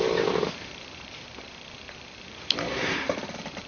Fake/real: fake